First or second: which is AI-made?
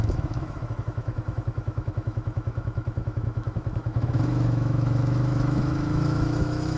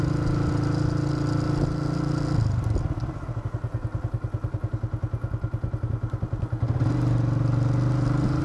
first